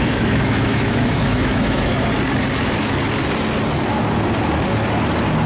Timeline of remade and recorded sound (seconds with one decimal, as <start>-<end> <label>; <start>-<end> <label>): 0.0-1.9 remade; 1.9-5.5 recorded